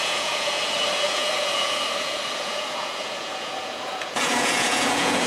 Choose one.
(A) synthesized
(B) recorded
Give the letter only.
A